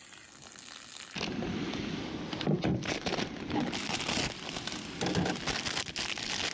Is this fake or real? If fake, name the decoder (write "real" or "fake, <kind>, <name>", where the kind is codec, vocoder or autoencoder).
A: real